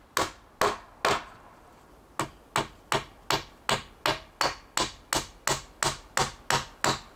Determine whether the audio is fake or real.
real